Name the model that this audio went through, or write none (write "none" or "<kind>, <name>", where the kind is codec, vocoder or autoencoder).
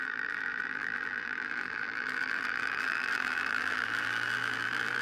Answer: vocoder, BigVGAN v2